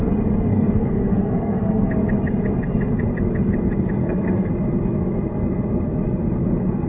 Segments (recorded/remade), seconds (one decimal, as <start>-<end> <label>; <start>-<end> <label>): 0.0-0.5 recorded; 0.5-1.9 remade; 1.9-4.0 recorded; 4.0-4.5 remade; 4.5-6.9 recorded